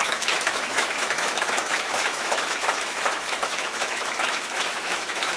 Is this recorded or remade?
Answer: remade